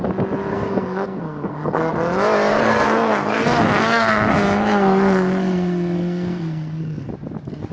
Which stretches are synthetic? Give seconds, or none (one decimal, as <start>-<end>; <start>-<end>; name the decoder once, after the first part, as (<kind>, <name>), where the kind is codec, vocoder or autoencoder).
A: 0.5-1.9 (codec, SNAC); 2.5-7.1